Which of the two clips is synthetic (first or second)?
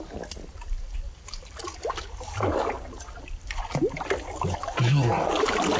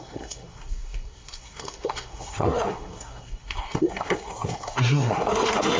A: second